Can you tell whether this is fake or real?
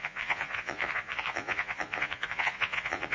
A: fake